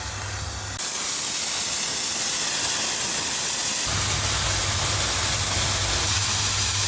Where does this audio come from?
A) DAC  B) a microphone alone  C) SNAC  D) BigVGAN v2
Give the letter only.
B